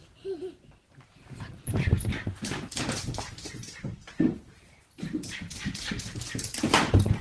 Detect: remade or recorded remade